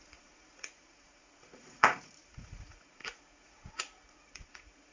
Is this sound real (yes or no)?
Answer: no